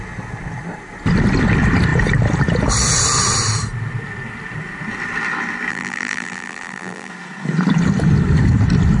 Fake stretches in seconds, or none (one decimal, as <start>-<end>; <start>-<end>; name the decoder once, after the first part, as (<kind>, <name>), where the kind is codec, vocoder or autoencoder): 5.7-7.1 (vocoder, BigVGAN v2)

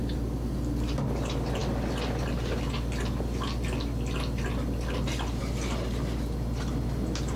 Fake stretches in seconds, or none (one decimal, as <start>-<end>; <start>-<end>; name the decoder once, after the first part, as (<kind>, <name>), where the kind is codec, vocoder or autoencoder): none

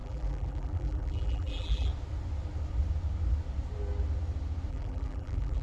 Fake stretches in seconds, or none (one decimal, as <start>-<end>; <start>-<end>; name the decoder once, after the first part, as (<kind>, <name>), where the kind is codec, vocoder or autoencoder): 0.0-1.9 (vocoder, BigVGAN v2); 4.7-5.6